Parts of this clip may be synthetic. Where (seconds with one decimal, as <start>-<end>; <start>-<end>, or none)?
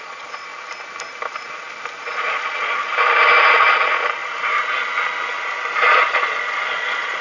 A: 0.0-0.5; 2.0-2.8; 3.5-4.2; 5.8-7.2